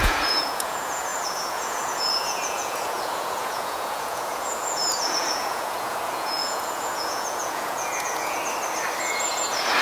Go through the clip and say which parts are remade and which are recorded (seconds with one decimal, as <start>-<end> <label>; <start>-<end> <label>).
0.0-8.4 remade; 8.4-9.0 recorded; 9.0-9.8 remade